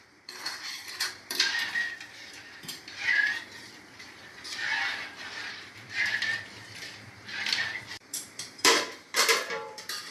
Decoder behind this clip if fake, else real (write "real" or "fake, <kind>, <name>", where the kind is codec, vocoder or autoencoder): fake, vocoder, BigVGAN v2